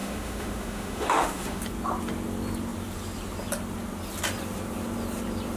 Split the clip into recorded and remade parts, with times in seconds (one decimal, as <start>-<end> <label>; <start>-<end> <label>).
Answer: 0.0-1.6 remade; 1.6-5.6 recorded

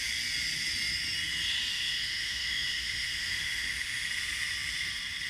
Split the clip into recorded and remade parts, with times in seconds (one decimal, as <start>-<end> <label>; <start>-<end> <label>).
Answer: 0.0-1.7 recorded; 1.7-4.1 remade; 4.1-5.3 recorded